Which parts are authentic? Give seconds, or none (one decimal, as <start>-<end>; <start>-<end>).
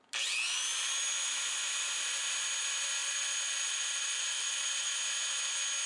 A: 0.0-3.0; 5.0-5.9